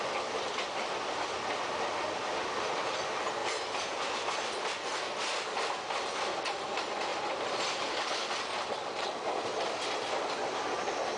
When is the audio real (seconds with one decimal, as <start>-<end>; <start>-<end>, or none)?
0.0-3.4; 3.9-11.2